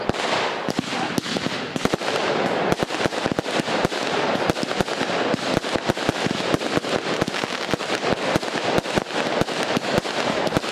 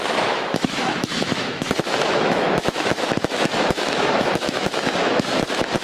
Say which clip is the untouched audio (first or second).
first